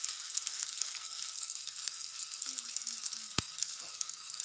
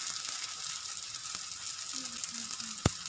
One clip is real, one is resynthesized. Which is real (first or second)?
second